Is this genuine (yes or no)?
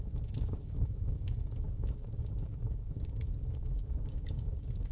no